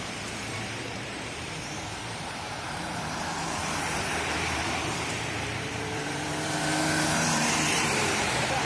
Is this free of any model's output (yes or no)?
no